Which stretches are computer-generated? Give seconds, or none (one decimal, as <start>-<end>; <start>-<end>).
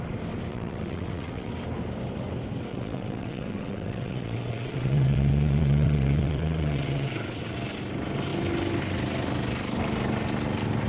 0.5-1.5; 2.7-7.4